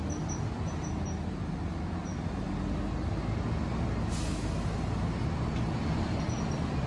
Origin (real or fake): real